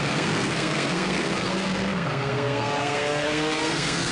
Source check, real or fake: fake